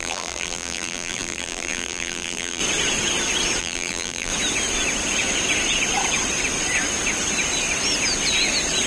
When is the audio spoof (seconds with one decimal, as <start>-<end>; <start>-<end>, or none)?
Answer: 0.0-2.6; 3.6-4.3